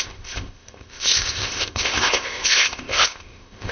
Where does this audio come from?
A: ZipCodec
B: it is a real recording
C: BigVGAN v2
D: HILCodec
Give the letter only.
A